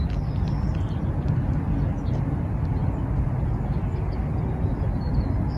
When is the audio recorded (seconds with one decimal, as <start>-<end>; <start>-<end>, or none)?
0.0-5.6

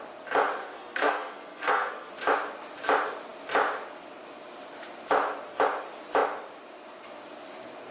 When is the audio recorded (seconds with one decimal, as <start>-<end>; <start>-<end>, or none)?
0.0-0.6; 2.1-7.9

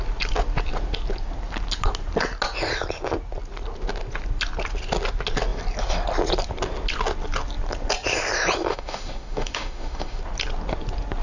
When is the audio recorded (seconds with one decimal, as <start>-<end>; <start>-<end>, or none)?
0.0-8.7; 10.2-11.2

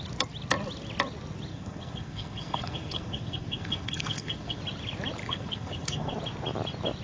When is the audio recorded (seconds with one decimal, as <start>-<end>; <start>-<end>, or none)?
0.0-1.5; 4.6-5.2; 6.1-7.0

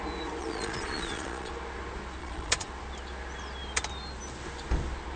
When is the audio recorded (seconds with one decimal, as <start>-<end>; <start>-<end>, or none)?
0.0-0.4; 1.5-2.2; 2.7-5.2

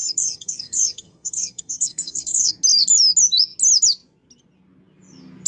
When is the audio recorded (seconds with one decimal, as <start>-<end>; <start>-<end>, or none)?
2.5-5.5

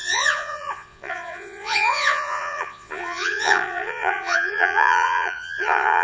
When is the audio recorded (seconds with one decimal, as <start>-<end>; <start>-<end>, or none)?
none